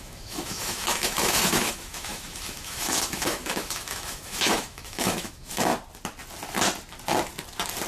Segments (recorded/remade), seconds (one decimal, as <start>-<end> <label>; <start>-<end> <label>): 0.0-5.7 remade; 5.7-7.9 recorded